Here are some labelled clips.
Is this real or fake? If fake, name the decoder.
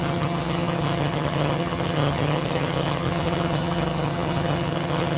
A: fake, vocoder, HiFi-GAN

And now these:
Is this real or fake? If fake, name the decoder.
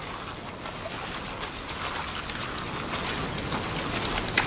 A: real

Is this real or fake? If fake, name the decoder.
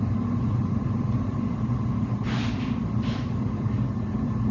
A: real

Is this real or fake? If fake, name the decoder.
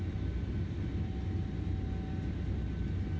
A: real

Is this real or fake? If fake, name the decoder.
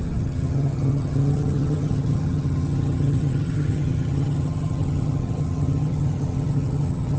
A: fake, vocoder, HiFi-GAN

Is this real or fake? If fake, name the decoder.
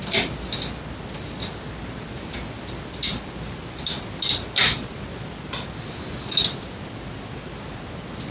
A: real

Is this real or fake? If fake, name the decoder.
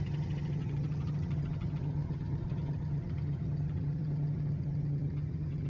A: fake, vocoder, HiFi-GAN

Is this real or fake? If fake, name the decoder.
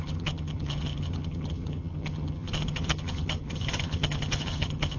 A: fake, vocoder, HiFi-GAN